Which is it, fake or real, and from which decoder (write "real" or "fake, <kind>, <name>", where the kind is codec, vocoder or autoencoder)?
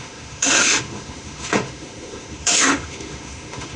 fake, autoencoder, DAC-VAE